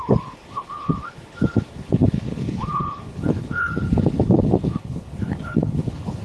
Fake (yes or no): yes